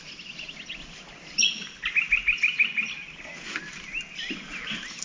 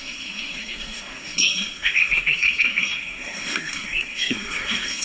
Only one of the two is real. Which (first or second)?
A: first